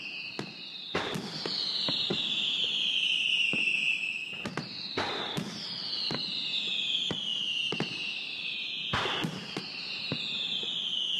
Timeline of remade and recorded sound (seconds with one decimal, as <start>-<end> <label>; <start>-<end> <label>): 0.0-11.2 recorded